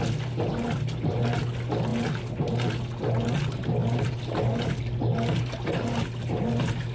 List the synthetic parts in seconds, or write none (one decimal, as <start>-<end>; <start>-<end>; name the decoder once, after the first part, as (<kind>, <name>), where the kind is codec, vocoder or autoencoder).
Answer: none